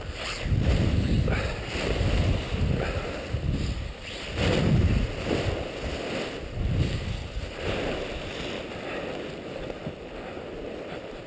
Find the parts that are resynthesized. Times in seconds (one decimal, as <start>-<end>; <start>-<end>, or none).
none